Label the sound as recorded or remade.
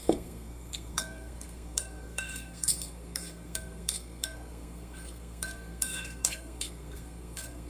remade